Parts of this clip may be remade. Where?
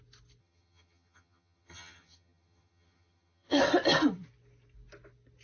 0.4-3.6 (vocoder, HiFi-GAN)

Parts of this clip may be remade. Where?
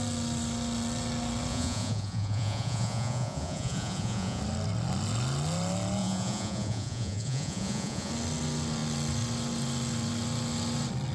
1.5-4.4 (vocoder, Vocos); 6.0-8.1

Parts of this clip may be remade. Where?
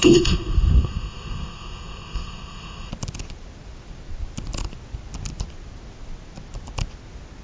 0.0-2.9 (codec, SNAC)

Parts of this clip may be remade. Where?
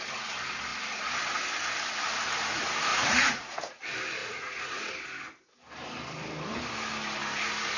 2.9-3.8 (vocoder, Vocos); 4.2-4.9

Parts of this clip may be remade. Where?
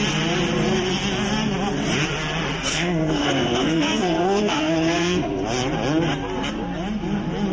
2.7-5.4 (codec, SNAC)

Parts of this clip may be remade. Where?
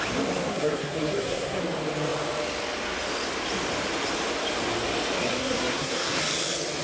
0.5-1.6 (codec, SNAC); 5.4-6.2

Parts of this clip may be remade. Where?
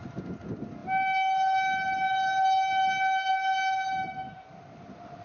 none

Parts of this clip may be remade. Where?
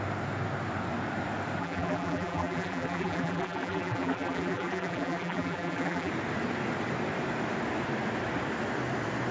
1.6-6.1 (vocoder, BigVGAN v2)